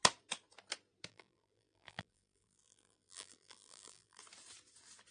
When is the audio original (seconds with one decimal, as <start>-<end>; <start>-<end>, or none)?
0.0-1.1; 4.2-5.1